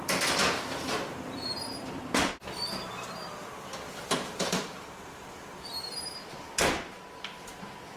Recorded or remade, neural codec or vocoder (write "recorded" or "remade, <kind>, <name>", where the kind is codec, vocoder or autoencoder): remade, vocoder, BigVGAN v2